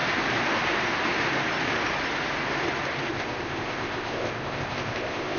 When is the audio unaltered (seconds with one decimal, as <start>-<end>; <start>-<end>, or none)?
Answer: 0.0-3.1